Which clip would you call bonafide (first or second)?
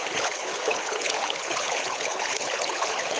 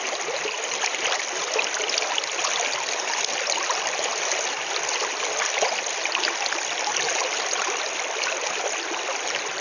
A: second